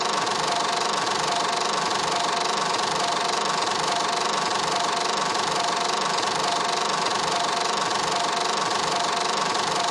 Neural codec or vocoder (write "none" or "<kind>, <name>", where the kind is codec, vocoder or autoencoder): none